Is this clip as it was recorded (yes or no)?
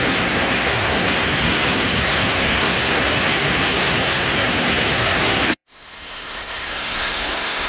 no